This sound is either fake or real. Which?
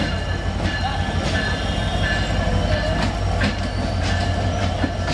real